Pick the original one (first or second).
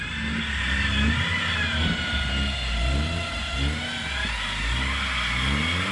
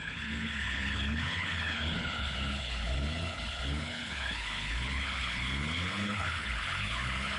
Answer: first